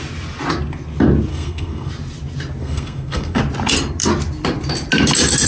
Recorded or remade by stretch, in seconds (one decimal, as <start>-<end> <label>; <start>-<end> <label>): 0.0-1.3 recorded; 1.3-1.9 remade; 1.9-2.6 recorded; 2.6-3.4 remade; 3.4-5.5 recorded